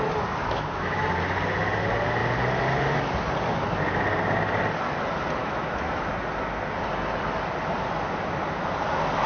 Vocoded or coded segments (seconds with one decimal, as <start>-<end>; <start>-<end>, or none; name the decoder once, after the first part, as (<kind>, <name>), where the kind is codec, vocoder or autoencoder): 0.4-1.1 (autoencoder, DAC-VAE); 5.4-6.1